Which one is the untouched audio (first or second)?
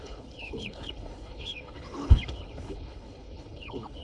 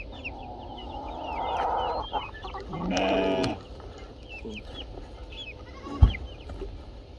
second